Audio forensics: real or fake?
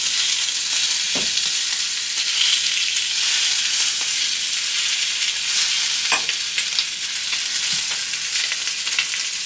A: real